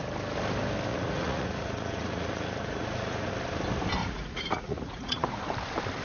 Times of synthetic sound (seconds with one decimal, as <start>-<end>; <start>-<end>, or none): 0.9-3.3; 4.0-5.4